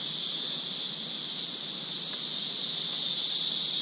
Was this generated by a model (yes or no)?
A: no